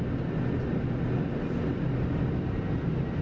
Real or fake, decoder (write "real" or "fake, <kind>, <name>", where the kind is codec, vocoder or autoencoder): real